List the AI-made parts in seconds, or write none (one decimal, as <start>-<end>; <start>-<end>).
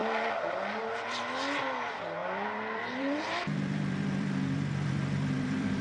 2.2-5.8